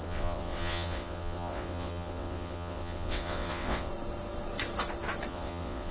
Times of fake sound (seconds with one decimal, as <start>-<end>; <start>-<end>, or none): 0.0-3.9; 5.3-5.9